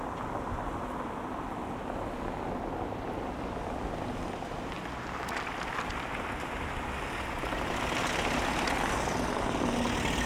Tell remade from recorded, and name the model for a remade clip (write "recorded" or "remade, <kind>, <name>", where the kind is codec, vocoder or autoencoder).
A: recorded